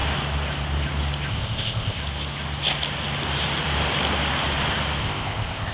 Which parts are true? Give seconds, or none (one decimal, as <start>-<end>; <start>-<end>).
0.0-1.3; 2.0-5.0